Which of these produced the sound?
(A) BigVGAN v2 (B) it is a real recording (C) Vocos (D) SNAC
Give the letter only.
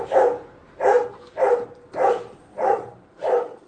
A